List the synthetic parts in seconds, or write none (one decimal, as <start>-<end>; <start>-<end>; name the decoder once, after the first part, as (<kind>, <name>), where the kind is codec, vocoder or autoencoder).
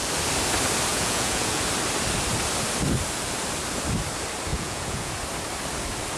0.9-1.6 (vocoder, Vocos); 4.5-5.1